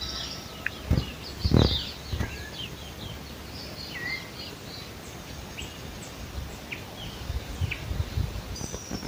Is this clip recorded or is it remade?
recorded